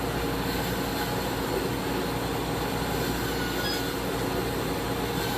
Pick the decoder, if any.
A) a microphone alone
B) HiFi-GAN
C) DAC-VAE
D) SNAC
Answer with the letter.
A